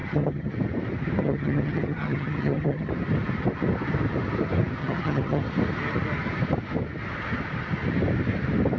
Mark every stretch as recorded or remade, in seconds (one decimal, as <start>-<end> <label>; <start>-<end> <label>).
0.0-0.5 remade; 0.5-1.2 recorded; 1.2-2.9 remade; 2.9-4.8 recorded; 4.8-5.4 remade; 5.4-8.8 recorded